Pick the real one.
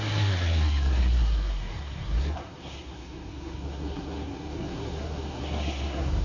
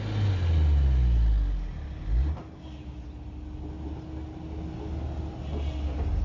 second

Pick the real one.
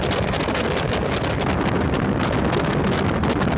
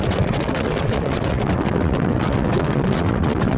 first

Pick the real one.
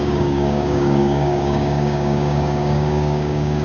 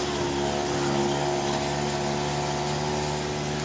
second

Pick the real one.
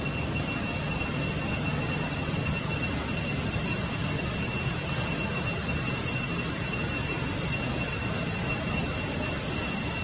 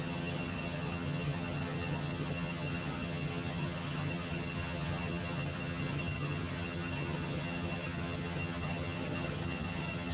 first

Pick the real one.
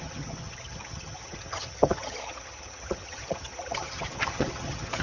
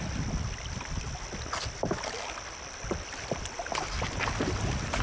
second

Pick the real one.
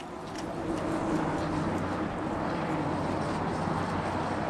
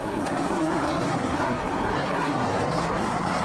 first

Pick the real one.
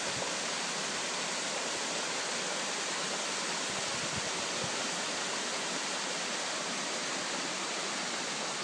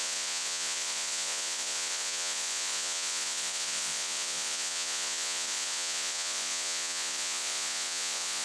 first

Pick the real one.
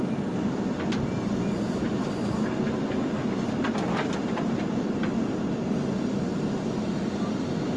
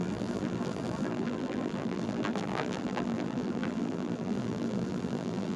first